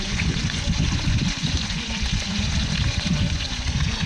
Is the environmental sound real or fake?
fake